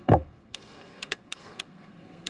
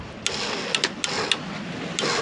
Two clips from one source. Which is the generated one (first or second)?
first